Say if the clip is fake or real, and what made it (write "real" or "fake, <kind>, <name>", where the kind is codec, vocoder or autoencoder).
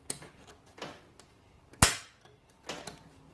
real